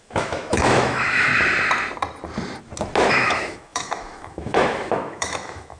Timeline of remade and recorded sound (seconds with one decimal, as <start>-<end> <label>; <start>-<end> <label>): 0.0-1.3 remade; 1.3-3.1 recorded; 3.1-5.8 remade